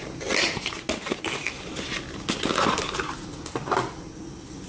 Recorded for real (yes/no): yes